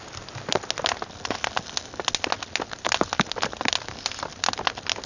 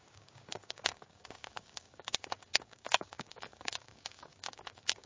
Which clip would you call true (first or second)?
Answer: first